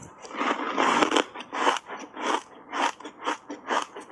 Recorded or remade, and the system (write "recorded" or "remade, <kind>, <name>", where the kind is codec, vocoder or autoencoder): recorded